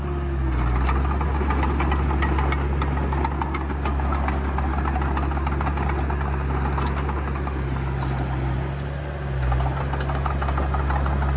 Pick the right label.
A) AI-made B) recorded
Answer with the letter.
B